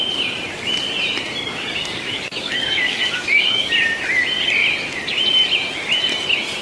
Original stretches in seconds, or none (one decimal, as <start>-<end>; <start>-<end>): 0.0-1.5; 3.7-6.6